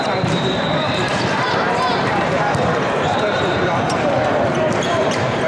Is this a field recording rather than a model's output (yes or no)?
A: no